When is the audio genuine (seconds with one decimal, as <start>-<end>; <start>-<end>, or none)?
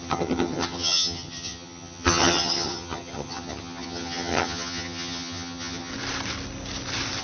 5.9-7.2